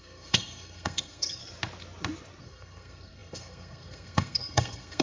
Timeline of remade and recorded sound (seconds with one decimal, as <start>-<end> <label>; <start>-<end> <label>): 0.0-1.4 remade; 1.4-2.4 recorded; 2.4-5.0 remade